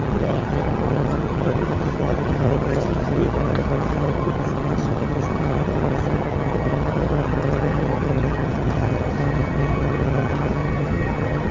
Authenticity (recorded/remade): remade